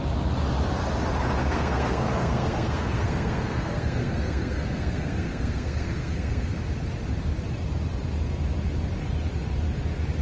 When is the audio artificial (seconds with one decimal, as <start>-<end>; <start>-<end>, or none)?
1.4-6.6